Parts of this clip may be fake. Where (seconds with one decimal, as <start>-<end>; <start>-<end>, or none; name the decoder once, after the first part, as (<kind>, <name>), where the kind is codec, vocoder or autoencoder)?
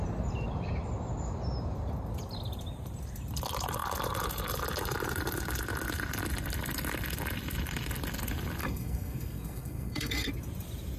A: 8.6-10.3 (codec, SNAC)